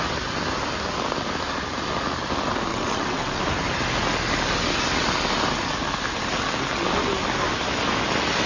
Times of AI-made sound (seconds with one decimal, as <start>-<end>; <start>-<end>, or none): 2.7-3.4